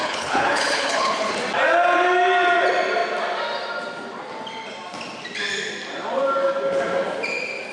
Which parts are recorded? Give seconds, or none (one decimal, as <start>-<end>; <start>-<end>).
1.3-7.7